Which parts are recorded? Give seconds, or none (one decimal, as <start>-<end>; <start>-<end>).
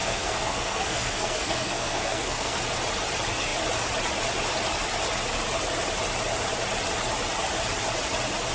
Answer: 2.6-8.5